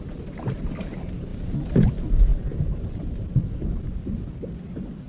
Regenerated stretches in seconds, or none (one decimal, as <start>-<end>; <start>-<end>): 1.3-1.9; 2.3-3.5